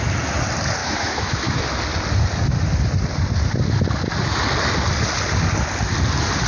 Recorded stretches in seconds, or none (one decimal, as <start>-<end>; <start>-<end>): 0.0-0.8; 1.6-6.5